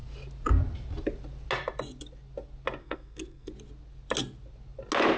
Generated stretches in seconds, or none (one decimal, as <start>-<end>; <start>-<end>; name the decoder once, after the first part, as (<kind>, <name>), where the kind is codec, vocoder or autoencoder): 2.8-3.5 (codec, SNAC)